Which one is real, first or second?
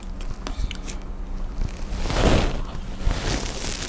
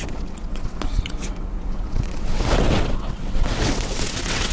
first